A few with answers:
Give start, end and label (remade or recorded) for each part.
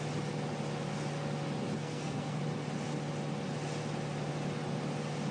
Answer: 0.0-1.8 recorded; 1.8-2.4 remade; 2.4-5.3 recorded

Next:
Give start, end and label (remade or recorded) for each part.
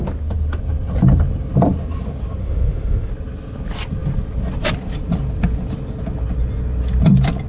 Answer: 0.0-2.4 recorded; 2.4-3.1 remade; 3.1-7.5 recorded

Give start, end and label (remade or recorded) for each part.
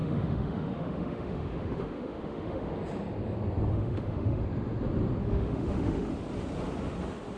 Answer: 0.0-2.7 remade; 2.7-3.7 recorded; 3.7-4.4 remade; 4.4-5.2 recorded; 5.2-6.1 remade; 6.1-7.4 recorded